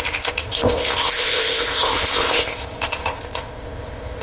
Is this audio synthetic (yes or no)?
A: yes